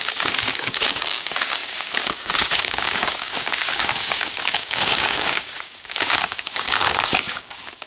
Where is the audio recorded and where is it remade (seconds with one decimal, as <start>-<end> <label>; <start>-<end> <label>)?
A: 0.0-7.9 remade